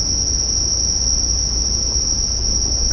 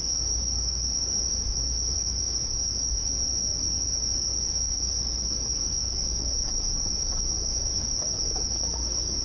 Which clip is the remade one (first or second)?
second